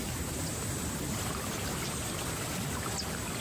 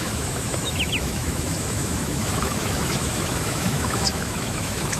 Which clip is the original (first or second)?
first